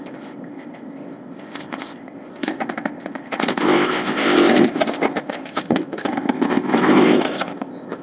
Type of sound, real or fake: fake